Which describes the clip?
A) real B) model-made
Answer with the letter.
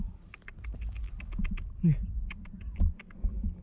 A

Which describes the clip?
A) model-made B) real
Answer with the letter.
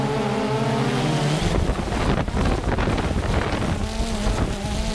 B